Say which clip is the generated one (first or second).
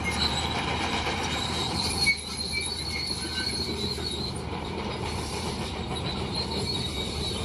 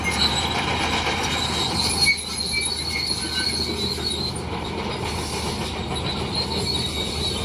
first